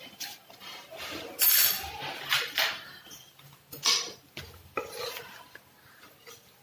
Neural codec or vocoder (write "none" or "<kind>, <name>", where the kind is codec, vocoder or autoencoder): none